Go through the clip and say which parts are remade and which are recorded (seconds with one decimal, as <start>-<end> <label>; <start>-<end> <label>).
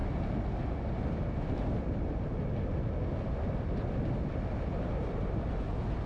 0.0-6.1 recorded